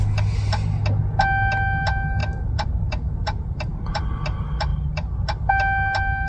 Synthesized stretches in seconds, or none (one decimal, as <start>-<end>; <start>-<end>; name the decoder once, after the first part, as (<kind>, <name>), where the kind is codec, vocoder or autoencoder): 2.2-4.1 (vocoder, BigVGAN v2); 4.7-5.2